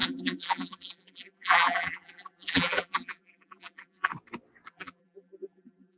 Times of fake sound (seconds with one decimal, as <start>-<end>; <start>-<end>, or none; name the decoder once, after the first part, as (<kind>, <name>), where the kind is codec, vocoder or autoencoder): 0.0-4.1 (vocoder, BigVGAN v2); 4.7-6.0